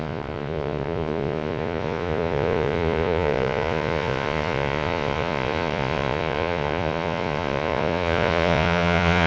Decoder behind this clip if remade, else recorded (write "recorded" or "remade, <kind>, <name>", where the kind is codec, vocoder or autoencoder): remade, vocoder, Vocos